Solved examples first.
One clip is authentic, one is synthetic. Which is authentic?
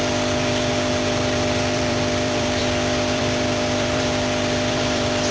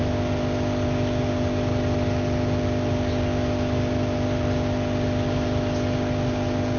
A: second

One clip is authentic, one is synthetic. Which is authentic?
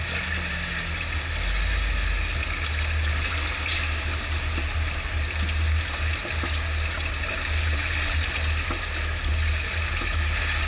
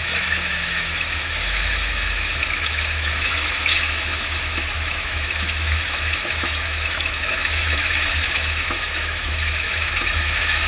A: first